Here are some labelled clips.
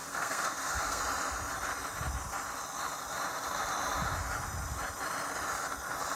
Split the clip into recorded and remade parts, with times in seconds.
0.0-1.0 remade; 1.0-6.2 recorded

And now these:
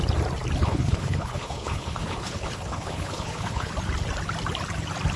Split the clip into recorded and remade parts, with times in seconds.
0.0-0.6 recorded; 0.6-3.7 remade; 3.7-5.2 recorded

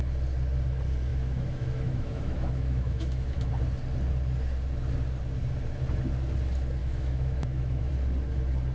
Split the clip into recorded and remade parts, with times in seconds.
0.0-1.1 recorded; 1.1-3.5 remade; 3.5-6.8 recorded; 6.8-7.9 remade; 7.9-8.7 recorded

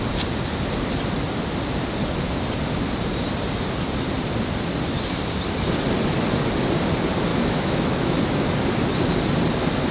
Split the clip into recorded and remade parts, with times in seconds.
0.0-7.3 recorded; 7.3-8.2 remade; 8.2-9.9 recorded

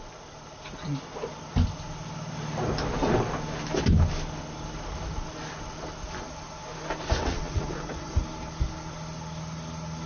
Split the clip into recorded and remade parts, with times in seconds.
0.0-7.2 recorded; 7.2-8.2 remade; 8.2-10.1 recorded

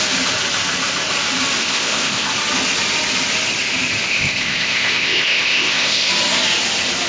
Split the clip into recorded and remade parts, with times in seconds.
0.0-1.6 recorded; 1.6-2.3 remade; 2.3-4.1 recorded; 4.1-6.1 remade; 6.1-7.1 recorded